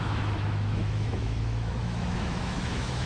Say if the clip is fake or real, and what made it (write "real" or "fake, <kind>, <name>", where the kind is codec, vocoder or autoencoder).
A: fake, autoencoder, DAC-VAE